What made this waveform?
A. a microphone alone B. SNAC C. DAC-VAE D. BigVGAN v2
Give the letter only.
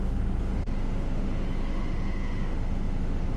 C